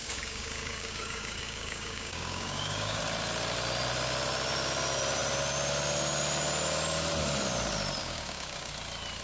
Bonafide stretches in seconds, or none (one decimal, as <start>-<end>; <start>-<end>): 3.0-8.0; 8.7-9.2